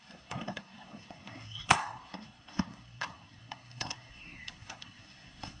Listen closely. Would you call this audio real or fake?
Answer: fake